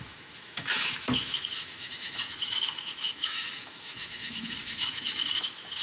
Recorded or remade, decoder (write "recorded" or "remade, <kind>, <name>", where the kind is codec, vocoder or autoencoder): remade, autoencoder, DAC-VAE